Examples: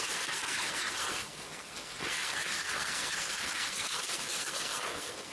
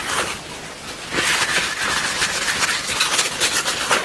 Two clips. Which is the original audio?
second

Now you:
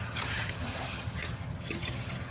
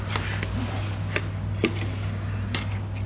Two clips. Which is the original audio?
second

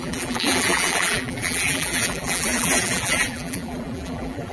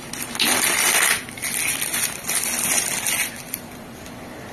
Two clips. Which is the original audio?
second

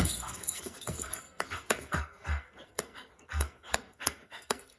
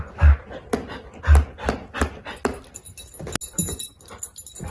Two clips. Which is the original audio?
second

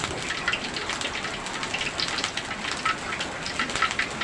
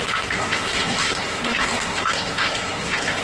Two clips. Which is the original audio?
first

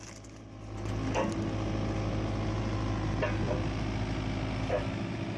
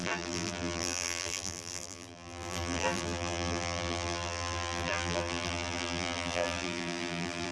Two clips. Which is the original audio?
first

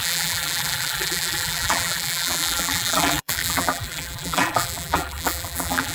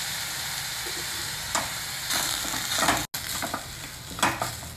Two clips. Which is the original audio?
second